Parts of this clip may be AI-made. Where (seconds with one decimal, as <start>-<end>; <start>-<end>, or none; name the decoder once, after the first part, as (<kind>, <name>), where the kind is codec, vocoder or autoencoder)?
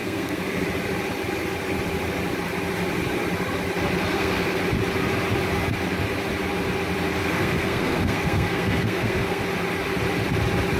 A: 0.0-0.6 (codec, SNAC); 4.1-4.6; 7.2-9.4